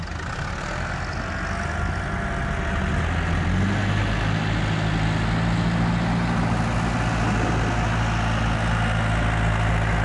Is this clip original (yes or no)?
yes